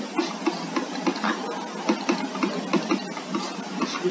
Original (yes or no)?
yes